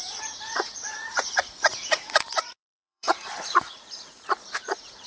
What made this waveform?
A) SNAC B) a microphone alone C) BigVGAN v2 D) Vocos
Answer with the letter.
D